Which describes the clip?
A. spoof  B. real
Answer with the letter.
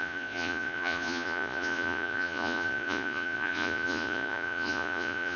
A